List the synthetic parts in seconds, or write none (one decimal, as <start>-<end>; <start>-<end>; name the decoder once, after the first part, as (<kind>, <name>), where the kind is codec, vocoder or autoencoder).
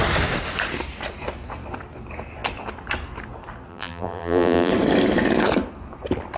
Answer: 3.7-4.7 (vocoder, BigVGAN v2)